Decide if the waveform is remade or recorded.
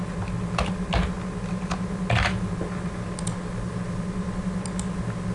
recorded